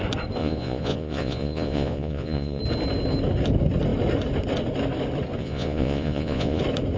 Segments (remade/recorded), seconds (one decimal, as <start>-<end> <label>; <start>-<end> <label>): 0.0-0.4 recorded; 0.4-2.6 remade; 2.6-5.4 recorded; 5.4-6.6 remade; 6.6-7.0 recorded